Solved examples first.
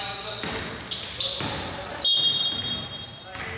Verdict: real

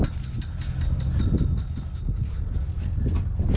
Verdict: real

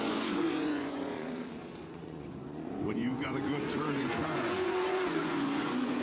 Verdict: fake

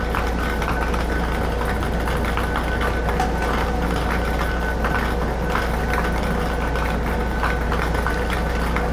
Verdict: real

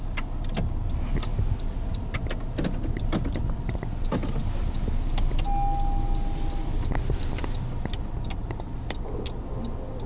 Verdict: real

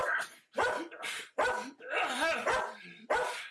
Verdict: real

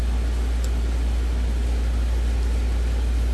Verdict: real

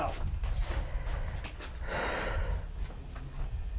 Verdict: real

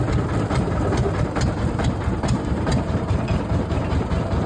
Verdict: fake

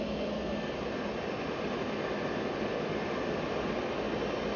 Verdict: real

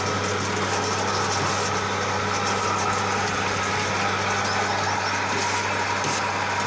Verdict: real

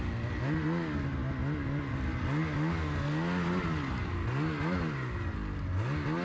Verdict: real